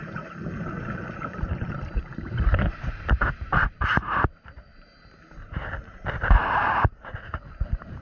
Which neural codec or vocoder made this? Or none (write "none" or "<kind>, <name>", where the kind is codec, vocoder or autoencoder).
vocoder, BigVGAN v2